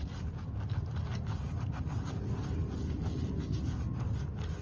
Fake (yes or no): no